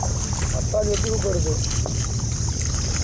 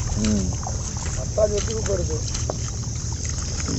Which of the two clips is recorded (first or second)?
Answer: first